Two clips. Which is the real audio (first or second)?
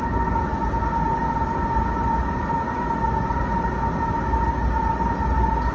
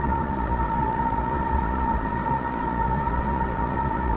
first